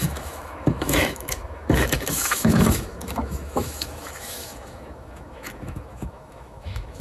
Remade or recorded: remade